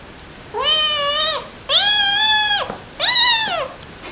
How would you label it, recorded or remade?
recorded